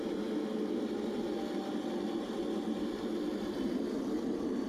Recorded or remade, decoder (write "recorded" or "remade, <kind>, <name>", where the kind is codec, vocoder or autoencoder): recorded